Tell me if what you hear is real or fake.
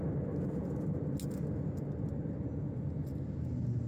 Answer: real